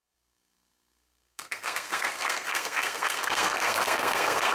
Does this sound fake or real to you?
fake